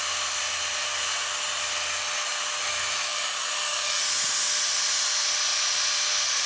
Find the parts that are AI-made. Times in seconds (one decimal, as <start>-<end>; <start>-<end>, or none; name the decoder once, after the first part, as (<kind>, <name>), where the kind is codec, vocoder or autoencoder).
3.1-4.0 (codec, DAC)